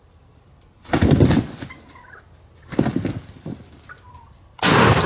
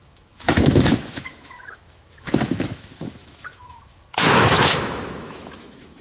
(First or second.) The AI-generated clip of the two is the second